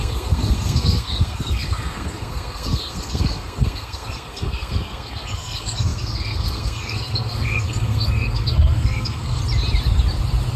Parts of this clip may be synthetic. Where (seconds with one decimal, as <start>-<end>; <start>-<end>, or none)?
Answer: 0.0-9.4